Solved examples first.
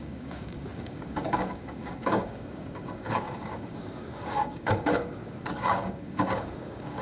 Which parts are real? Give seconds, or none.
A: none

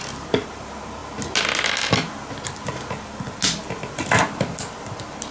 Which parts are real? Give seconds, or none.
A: 0.0-5.3

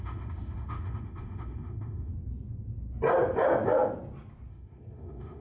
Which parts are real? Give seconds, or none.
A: 2.1-4.5